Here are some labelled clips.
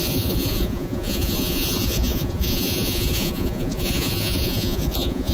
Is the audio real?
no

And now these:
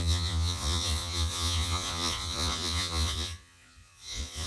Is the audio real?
no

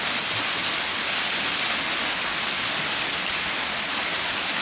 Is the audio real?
yes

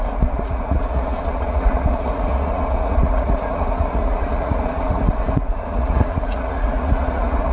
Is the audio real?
no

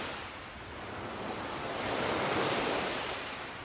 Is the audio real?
yes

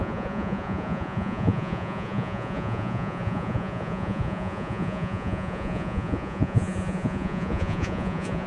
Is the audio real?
no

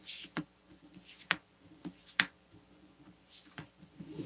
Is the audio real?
no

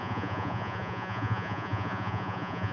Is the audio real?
no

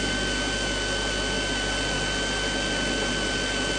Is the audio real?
yes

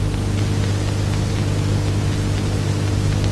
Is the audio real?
yes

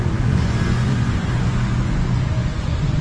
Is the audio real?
no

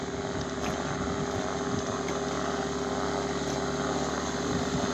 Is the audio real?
yes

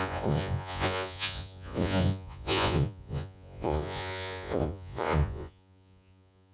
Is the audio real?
no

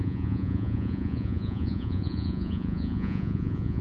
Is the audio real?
no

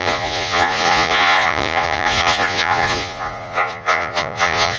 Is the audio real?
no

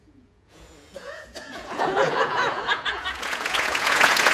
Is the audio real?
no